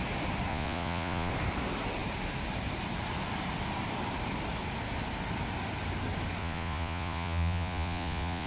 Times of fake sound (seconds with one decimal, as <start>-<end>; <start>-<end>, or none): 0.5-1.3; 6.4-8.5